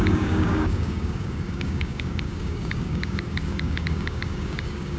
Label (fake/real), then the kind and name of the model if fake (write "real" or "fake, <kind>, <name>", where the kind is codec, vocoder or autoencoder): fake, codec, DAC